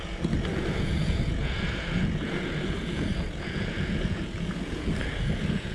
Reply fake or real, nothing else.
fake